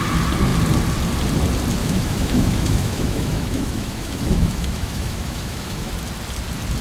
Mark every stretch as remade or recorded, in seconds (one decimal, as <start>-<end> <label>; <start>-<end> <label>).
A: 0.0-1.8 recorded; 1.8-5.9 remade; 5.9-6.8 recorded